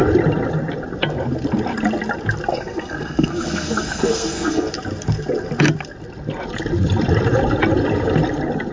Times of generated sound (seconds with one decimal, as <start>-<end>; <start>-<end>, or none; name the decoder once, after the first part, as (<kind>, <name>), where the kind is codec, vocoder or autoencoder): 2.5-4.7 (codec, SNAC)